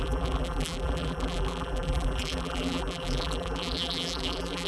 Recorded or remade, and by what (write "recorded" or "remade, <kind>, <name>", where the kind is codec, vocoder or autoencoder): remade, vocoder, BigVGAN v2